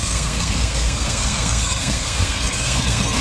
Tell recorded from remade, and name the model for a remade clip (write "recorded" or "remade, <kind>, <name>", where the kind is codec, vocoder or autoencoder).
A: remade, codec, SNAC